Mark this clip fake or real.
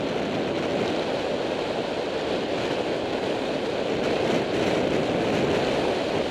real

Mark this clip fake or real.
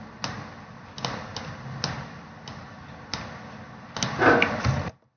real